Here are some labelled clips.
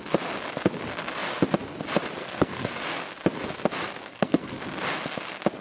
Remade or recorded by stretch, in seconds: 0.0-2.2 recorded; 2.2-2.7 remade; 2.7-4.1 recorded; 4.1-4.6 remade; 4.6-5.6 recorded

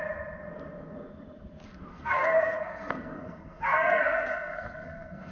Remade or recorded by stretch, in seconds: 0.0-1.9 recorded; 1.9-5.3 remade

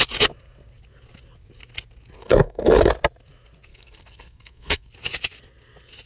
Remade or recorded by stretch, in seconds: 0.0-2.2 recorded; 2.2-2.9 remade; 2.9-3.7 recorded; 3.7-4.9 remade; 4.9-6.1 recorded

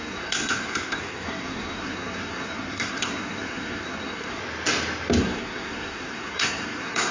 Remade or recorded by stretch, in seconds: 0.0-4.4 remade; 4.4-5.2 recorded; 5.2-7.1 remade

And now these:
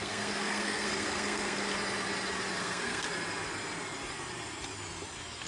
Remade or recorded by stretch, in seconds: 0.0-1.7 remade; 1.7-2.6 recorded; 2.6-3.1 remade; 3.1-5.5 recorded

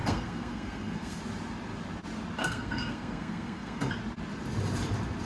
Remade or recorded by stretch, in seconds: 0.0-1.2 remade; 1.2-2.4 recorded; 2.4-3.9 remade; 3.9-5.3 recorded

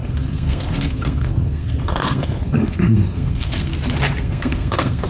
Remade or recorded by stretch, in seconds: 0.0-3.7 remade; 3.7-4.2 recorded; 4.2-5.1 remade